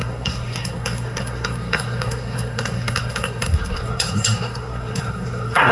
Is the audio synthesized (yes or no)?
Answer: yes